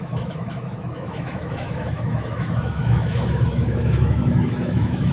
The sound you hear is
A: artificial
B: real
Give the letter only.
A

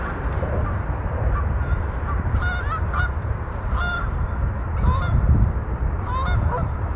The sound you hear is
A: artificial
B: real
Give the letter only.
B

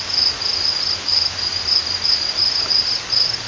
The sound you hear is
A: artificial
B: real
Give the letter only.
B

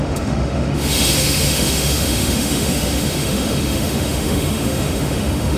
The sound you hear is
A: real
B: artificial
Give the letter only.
B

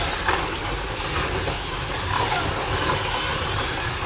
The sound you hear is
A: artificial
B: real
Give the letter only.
B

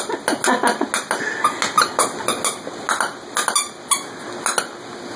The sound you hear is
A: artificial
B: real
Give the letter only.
B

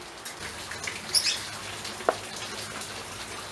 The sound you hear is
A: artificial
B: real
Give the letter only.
B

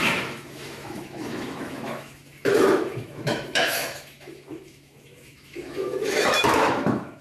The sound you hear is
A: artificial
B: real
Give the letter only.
A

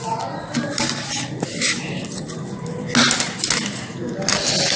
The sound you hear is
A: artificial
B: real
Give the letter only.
B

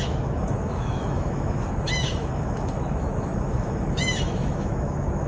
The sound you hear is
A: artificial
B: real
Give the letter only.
A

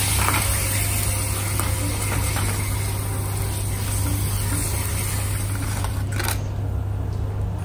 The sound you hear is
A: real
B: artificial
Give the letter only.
A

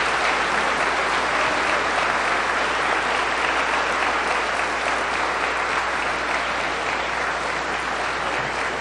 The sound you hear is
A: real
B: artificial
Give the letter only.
A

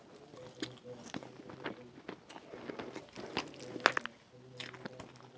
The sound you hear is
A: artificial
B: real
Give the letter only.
B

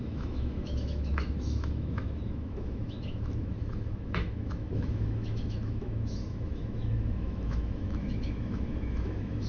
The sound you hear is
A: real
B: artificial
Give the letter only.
B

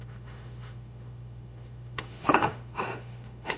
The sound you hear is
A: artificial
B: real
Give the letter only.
A